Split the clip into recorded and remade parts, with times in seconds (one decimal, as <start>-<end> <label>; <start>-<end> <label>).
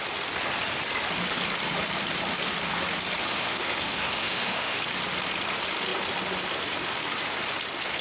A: 0.0-3.2 recorded; 3.2-4.8 remade; 4.8-8.0 recorded